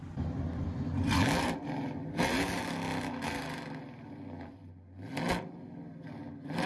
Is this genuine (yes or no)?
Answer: yes